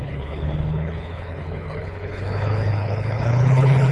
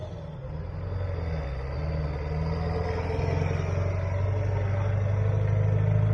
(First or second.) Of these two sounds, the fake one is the first